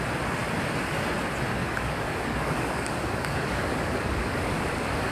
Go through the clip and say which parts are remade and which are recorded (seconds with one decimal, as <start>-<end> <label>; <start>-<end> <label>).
0.0-1.6 recorded; 1.6-5.1 remade